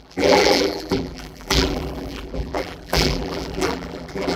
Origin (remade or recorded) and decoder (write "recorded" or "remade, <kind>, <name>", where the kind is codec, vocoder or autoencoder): remade, vocoder, BigVGAN v2